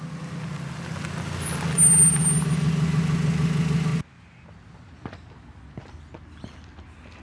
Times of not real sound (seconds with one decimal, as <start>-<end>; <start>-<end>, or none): none